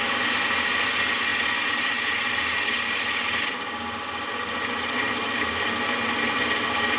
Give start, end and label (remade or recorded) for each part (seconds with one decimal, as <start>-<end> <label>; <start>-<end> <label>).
0.0-7.0 recorded

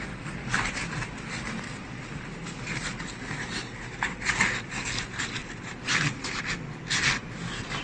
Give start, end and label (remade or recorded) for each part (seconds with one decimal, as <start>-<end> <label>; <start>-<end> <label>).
0.0-7.8 recorded